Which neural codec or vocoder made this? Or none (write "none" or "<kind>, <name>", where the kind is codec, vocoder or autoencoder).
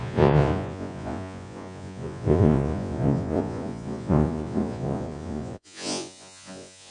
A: vocoder, Vocos